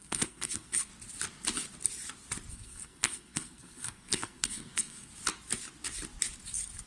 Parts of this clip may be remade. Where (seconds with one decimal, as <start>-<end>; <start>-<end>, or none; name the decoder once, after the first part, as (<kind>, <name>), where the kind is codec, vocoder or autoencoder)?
0.0-0.9 (codec, SNAC); 2.5-5.1